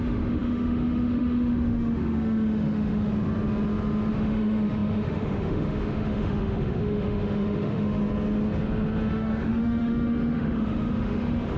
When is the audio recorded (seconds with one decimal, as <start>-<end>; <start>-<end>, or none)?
3.1-4.1; 8.0-9.1